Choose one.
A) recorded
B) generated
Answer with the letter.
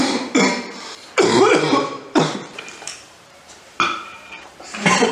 B